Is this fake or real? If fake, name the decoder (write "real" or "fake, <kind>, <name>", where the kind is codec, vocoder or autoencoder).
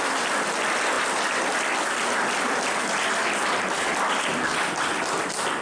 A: real